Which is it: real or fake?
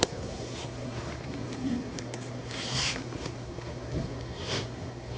fake